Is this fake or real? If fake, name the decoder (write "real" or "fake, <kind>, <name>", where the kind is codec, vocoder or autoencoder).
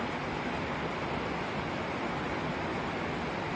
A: real